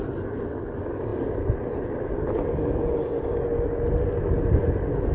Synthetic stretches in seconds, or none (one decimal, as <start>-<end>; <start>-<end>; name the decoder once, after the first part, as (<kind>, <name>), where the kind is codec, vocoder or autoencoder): none